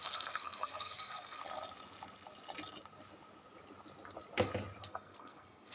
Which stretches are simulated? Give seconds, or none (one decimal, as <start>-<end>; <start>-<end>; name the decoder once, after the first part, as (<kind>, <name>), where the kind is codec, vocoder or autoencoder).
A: 0.0-1.4 (codec, SNAC); 4.8-5.7